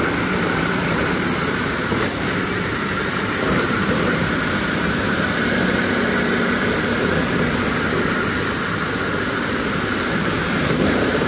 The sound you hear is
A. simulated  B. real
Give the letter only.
A